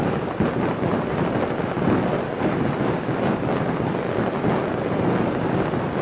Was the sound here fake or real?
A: real